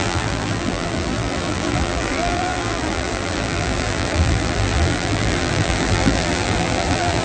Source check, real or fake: fake